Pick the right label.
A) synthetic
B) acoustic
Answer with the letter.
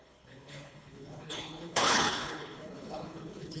A